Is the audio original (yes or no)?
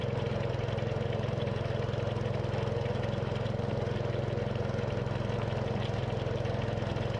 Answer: yes